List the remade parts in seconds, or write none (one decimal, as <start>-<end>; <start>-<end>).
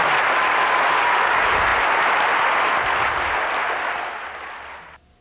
none